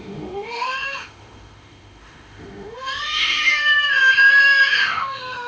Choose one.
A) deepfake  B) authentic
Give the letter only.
A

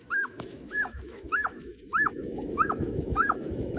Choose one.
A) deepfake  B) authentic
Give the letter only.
A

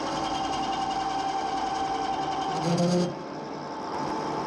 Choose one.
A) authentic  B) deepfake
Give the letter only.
A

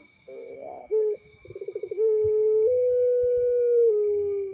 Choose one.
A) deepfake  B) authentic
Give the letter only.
A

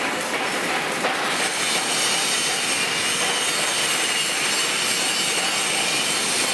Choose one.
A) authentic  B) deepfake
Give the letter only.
A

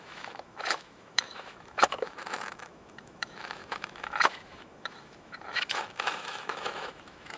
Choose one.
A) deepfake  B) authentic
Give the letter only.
A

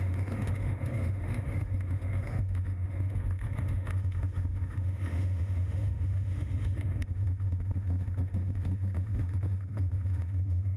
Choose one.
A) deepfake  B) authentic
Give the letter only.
A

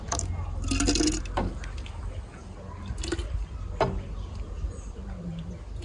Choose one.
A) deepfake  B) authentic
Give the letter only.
B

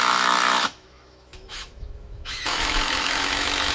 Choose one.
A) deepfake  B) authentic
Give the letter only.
A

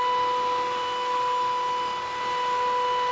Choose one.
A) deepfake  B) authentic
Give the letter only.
B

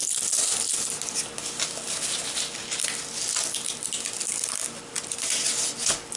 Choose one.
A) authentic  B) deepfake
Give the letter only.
A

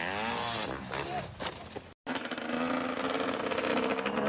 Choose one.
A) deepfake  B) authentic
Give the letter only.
B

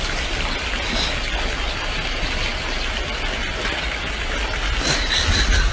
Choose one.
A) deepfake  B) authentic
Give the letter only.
B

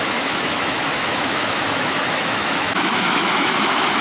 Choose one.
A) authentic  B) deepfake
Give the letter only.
B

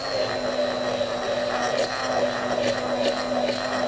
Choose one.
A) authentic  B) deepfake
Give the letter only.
A